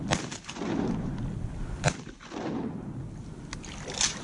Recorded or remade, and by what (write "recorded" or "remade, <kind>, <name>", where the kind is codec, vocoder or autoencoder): recorded